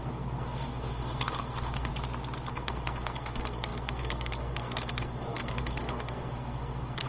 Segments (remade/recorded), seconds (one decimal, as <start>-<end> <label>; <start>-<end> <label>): 0.0-1.9 remade; 1.9-2.5 recorded; 2.5-7.1 remade

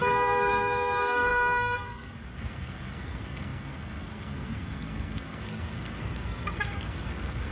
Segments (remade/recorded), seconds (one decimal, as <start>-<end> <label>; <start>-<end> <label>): 0.0-7.5 remade